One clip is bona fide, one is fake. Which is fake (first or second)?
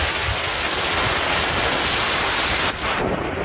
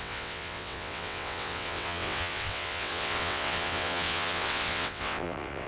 second